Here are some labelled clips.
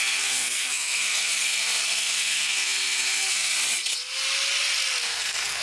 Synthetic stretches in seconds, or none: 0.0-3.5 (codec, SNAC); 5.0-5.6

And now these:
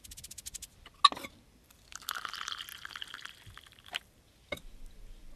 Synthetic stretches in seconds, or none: none

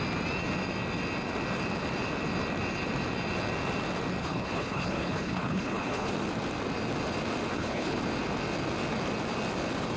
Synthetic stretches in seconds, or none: 4.2-6.1 (codec, HILCodec); 7.5-8.0

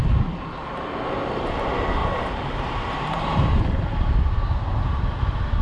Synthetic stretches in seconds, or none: 2.0-5.6 (vocoder, BigVGAN v2)

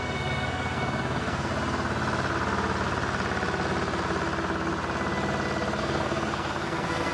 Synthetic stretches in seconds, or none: 0.0-1.5 (codec, SNAC); 5.8-7.1

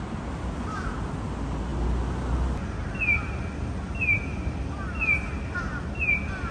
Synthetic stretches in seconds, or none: none

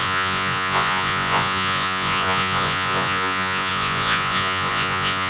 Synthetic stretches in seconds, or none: 0.0-5.3 (vocoder, Vocos)

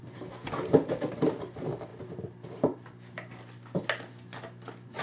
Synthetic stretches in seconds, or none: none